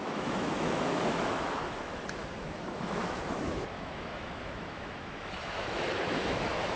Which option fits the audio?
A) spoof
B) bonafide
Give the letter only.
A